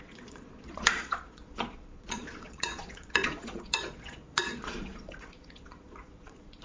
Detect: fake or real fake